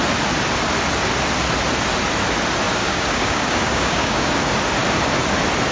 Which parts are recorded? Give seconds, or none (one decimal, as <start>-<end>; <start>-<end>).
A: 0.0-2.8; 4.3-5.7